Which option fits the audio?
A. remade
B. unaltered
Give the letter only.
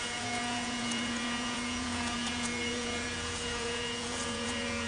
A